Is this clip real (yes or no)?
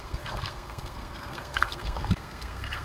no